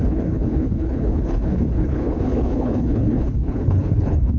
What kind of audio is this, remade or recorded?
remade